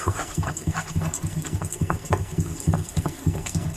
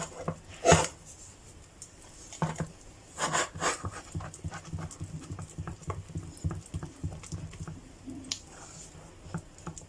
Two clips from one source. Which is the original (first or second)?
second